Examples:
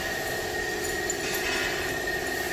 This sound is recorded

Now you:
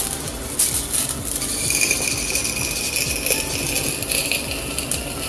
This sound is recorded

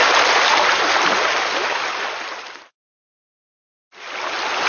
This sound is recorded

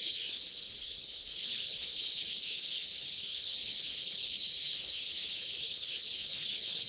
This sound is remade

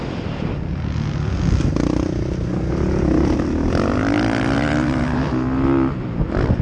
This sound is recorded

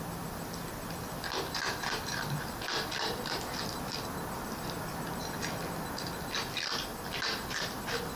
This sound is recorded